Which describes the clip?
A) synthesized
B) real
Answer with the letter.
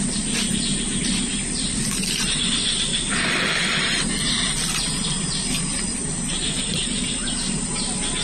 A